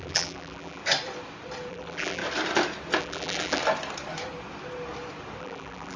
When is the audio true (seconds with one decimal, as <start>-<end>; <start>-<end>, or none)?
0.8-1.7; 2.2-3.0; 3.6-5.4